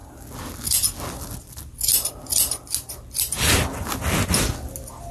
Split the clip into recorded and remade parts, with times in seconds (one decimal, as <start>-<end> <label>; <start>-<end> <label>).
0.0-5.1 recorded